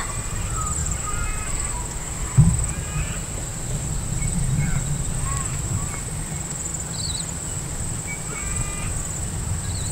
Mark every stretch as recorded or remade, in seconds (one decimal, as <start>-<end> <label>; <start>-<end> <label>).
0.0-6.7 remade; 6.7-9.0 recorded; 9.0-9.9 remade